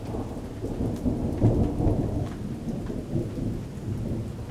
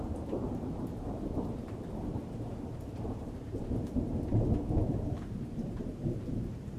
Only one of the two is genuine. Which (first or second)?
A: first